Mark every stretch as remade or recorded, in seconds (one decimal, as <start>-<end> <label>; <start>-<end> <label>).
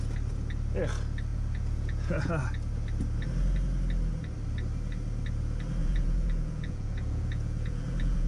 0.0-1.3 recorded; 1.3-2.3 remade; 2.3-5.8 recorded; 5.8-8.3 remade